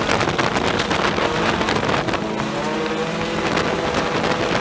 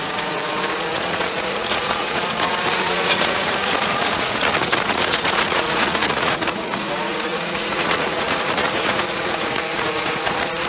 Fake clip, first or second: second